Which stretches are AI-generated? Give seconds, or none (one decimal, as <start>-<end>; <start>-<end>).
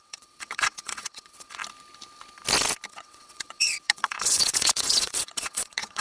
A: 0.0-1.6; 2.9-6.0